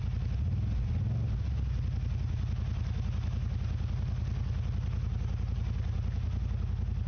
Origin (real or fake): real